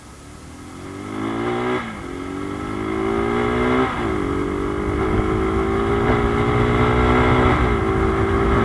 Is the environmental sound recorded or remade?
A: recorded